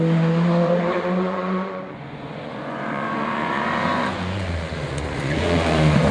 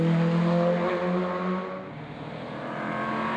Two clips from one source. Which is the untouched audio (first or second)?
second